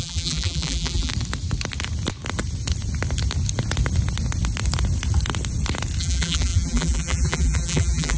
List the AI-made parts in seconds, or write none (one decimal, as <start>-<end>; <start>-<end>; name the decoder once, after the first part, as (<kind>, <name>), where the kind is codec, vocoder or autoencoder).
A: 0.0-1.1 (vocoder, BigVGAN v2); 6.0-8.2